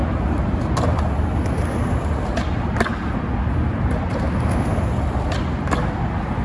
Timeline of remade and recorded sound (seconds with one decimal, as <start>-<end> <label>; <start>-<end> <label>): 0.0-6.4 recorded